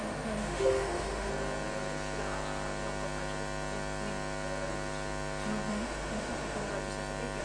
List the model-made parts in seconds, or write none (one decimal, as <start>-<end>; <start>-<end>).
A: 0.0-1.3; 5.7-6.7